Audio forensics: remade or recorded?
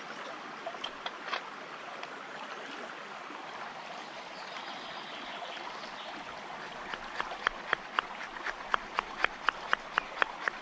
recorded